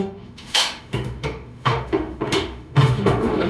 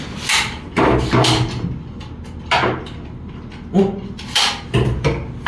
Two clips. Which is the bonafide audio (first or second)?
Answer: second